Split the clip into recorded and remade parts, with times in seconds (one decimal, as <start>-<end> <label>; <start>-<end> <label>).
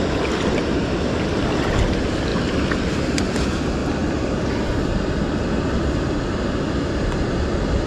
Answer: 0.0-3.8 recorded; 3.8-7.0 remade; 7.0-7.9 recorded